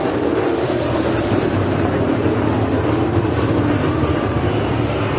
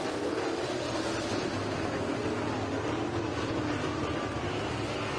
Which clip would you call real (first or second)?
second